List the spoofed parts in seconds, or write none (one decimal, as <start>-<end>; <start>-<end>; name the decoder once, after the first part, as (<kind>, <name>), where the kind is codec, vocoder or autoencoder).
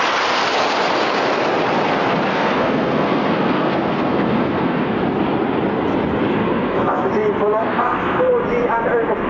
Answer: 2.3-4.9 (codec, SNAC); 6.4-7.1; 7.6-8.3